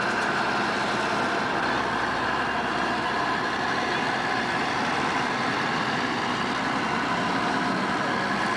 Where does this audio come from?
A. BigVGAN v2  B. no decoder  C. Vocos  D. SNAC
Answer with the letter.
B